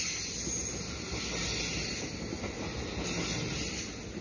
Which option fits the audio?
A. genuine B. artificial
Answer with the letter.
A